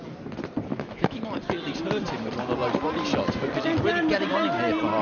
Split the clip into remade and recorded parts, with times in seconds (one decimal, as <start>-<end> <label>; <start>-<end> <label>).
0.0-0.7 recorded; 0.7-1.2 remade; 1.2-5.0 recorded